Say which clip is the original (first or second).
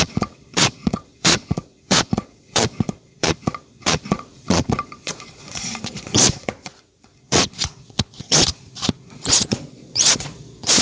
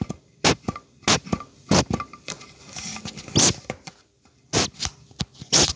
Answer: second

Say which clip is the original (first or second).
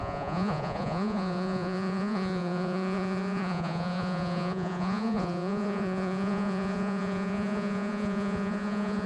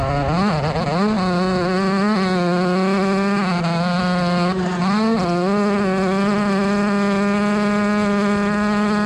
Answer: second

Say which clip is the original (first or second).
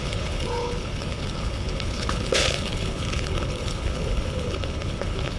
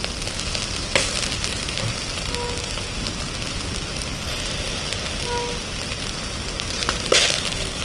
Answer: second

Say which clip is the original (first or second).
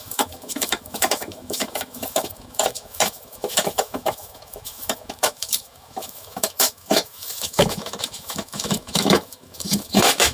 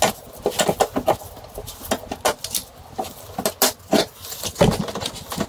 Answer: second